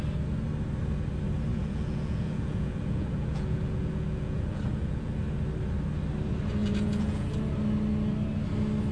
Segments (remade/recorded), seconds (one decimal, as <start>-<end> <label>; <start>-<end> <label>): 0.0-1.5 recorded; 1.5-5.1 remade; 5.1-6.6 recorded; 6.6-7.5 remade; 7.5-8.9 recorded